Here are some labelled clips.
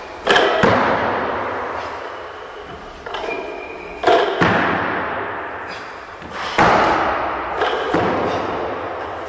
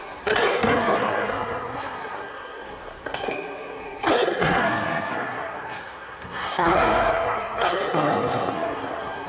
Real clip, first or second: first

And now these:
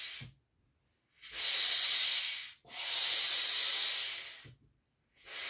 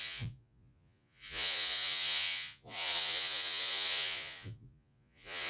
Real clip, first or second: first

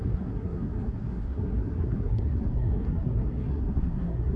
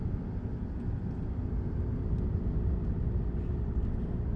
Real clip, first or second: second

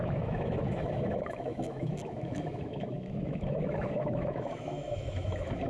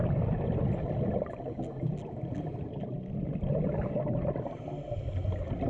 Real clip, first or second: second